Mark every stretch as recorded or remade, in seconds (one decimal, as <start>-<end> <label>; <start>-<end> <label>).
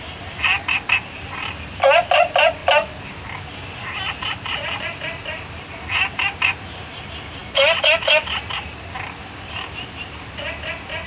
0.0-11.1 recorded